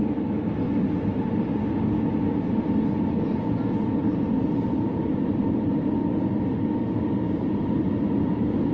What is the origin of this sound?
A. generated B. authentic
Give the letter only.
B